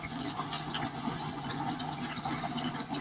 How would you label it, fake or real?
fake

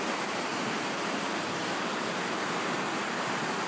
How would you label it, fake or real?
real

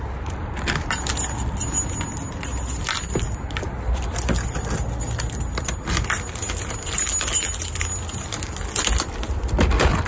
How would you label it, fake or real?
real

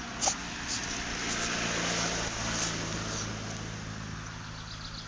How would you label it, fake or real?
real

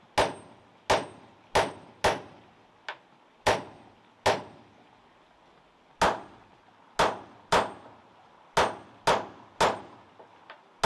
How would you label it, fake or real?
real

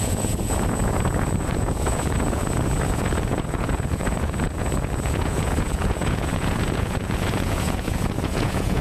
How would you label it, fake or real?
fake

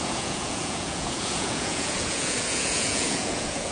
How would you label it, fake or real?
fake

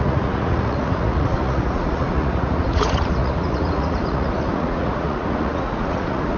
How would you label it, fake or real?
fake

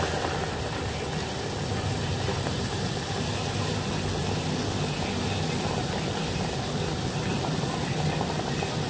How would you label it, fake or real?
real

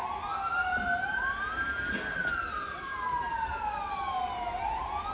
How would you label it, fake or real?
real